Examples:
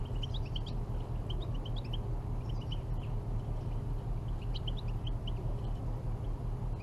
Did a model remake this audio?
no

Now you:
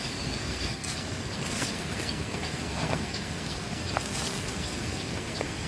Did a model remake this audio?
yes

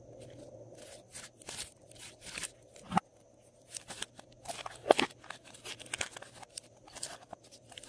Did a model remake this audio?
no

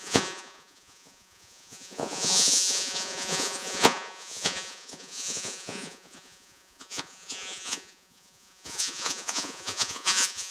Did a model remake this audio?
yes